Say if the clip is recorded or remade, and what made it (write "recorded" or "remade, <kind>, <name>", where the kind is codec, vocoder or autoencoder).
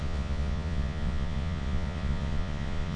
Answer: remade, vocoder, Vocos